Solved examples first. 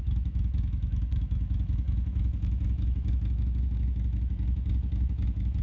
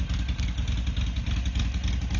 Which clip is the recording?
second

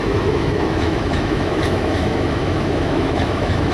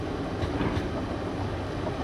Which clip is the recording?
second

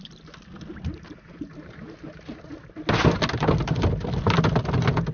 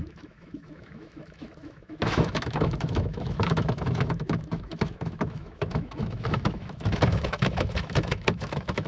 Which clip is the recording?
first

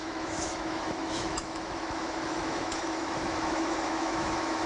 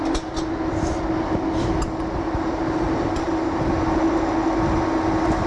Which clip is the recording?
second